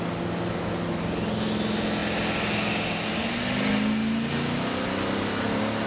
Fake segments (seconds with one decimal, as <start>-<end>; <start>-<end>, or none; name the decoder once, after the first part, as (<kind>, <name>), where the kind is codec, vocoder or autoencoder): none